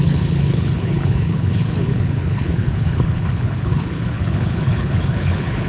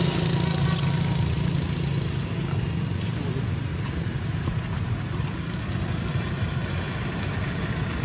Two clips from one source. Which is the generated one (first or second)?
first